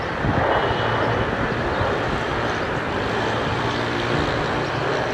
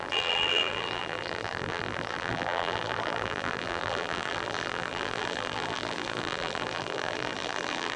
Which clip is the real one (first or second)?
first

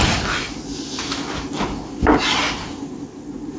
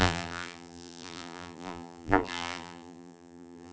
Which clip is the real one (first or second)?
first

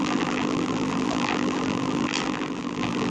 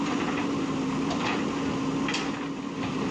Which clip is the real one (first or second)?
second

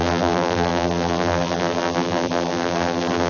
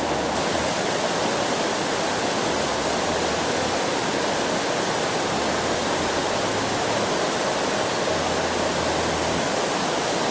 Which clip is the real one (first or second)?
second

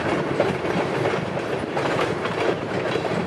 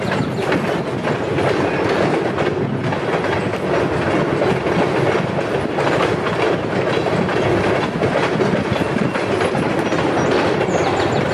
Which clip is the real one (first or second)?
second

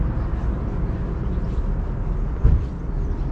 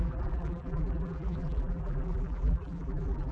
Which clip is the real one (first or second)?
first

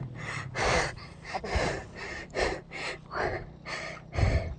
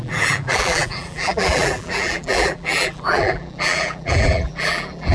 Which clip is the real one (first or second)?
first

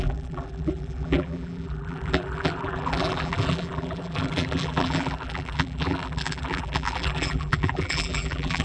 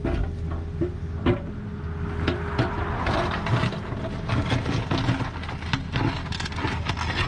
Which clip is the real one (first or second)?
second